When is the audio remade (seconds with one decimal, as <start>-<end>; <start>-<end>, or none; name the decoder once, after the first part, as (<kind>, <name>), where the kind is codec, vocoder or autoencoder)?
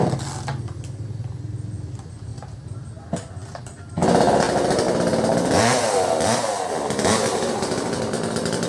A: 7.2-8.0 (vocoder, BigVGAN v2)